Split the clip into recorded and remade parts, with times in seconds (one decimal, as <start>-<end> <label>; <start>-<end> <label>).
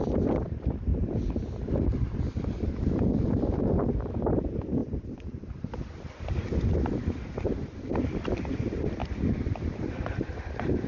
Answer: 0.0-0.9 remade; 0.9-4.1 recorded; 4.1-9.0 remade; 9.0-9.8 recorded; 9.8-10.9 remade